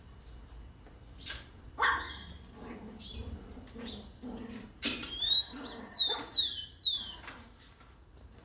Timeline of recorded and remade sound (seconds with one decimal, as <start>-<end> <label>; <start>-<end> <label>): 0.0-4.6 recorded; 4.6-8.4 remade